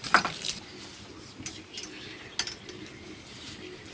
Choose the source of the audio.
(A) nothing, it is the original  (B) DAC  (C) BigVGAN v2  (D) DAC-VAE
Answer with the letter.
A